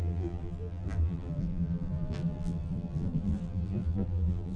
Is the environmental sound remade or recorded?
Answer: remade